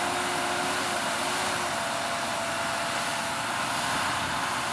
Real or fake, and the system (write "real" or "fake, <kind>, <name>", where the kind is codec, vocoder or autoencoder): real